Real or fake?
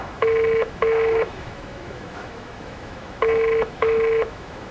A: fake